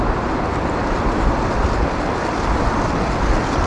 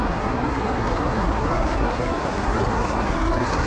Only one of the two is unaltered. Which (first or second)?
first